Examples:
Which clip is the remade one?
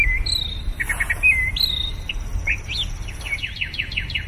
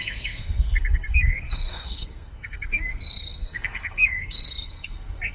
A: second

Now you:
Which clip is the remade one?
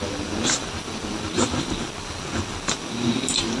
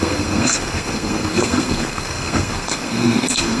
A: second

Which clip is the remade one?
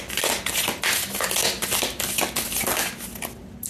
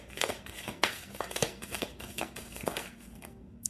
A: second